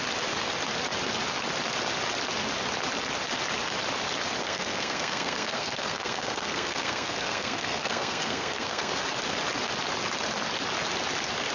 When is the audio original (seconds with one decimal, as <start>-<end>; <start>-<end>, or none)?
0.0-4.4; 8.9-11.5